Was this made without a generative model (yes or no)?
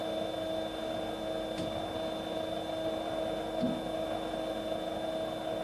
yes